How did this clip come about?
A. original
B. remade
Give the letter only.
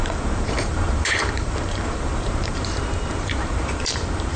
B